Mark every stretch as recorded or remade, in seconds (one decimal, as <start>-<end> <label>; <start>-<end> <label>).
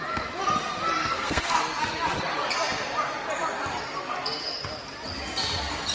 0.0-1.0 recorded; 1.0-1.6 remade; 1.6-5.9 recorded